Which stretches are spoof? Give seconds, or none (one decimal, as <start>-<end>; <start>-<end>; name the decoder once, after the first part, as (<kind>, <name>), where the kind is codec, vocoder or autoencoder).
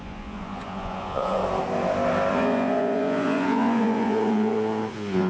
0.0-1.4 (vocoder, Vocos); 2.3-5.3